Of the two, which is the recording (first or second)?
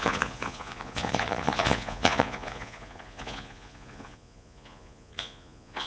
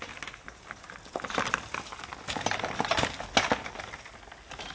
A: second